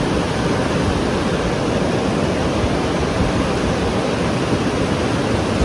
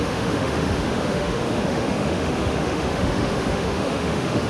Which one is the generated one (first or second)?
second